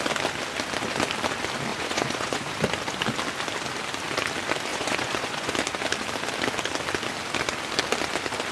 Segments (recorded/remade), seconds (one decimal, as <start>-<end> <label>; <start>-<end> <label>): 0.0-1.7 recorded; 1.7-2.5 remade; 2.5-4.7 recorded; 4.7-5.5 remade; 5.5-8.5 recorded